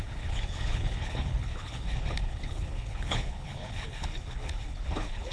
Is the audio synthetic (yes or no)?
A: yes